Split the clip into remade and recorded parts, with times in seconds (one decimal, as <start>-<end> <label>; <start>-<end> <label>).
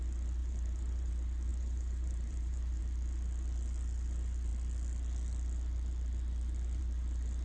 0.0-0.4 recorded; 0.4-1.1 remade; 1.1-1.5 recorded; 1.5-2.8 remade; 2.8-7.4 recorded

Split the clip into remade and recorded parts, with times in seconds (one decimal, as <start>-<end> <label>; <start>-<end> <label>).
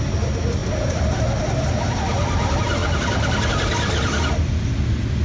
0.0-5.2 recorded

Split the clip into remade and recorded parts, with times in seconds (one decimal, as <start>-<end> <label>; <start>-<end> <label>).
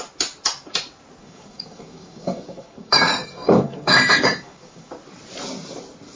0.0-1.2 recorded; 1.2-4.9 remade; 4.9-6.2 recorded